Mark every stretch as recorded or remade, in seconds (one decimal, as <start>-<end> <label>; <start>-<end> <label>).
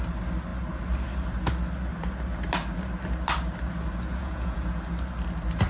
0.0-4.2 recorded; 4.2-4.8 remade; 4.8-5.7 recorded